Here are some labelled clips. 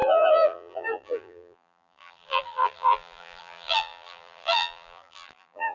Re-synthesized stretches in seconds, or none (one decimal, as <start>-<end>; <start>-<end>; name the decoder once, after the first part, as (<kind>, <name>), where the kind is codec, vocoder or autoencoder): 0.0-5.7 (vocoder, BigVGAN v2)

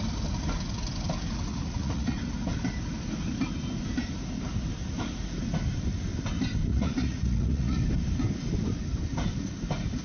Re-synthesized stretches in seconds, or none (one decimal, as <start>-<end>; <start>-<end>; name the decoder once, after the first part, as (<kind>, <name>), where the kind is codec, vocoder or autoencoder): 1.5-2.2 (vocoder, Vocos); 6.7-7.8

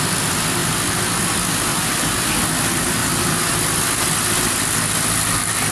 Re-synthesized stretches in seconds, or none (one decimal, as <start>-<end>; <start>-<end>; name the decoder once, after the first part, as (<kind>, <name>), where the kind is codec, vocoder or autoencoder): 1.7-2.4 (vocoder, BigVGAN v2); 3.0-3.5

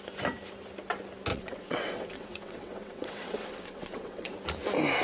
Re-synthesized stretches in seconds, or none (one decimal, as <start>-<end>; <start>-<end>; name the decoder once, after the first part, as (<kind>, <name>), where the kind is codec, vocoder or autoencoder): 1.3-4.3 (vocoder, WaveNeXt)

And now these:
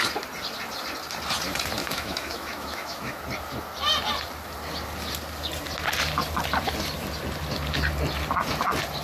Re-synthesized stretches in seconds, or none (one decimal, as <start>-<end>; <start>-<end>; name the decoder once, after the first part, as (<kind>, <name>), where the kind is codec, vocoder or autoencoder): 1.8-3.2 (autoencoder, DAC-VAE)

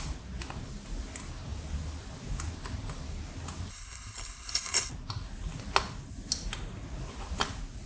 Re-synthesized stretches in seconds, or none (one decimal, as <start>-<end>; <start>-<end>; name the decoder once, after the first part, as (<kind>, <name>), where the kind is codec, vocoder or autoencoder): 3.7-4.9 (codec, HILCodec)

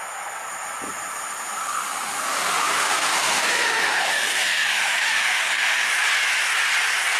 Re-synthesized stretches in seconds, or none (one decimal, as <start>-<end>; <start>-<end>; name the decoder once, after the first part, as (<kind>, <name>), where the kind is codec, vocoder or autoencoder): 1.6-5.9 (autoencoder, DAC-VAE)